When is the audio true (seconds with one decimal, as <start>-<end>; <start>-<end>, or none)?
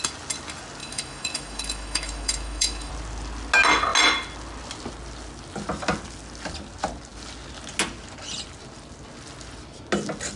0.0-0.8; 2.9-10.4